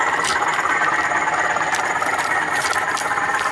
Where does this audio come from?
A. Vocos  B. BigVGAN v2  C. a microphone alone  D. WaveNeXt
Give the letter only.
C